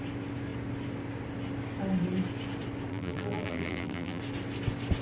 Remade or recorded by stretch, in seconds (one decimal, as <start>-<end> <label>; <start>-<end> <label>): 0.0-2.9 recorded; 2.9-4.2 remade; 4.2-5.0 recorded